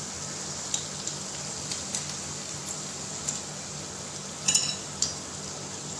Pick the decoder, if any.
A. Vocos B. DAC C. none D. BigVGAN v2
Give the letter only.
C